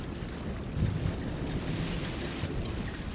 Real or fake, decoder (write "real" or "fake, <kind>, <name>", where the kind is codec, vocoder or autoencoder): real